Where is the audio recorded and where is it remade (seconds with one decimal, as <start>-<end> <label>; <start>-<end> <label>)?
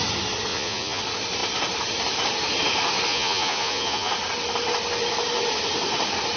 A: 0.0-0.5 recorded; 0.5-1.0 remade; 1.0-3.1 recorded; 3.1-4.1 remade; 4.1-6.4 recorded